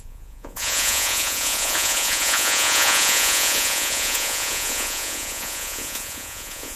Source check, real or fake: fake